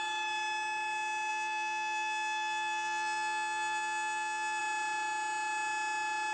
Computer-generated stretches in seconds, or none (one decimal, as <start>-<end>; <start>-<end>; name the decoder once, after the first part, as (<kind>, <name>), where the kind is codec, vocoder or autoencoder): 1.3-4.6 (vocoder, BigVGAN v2)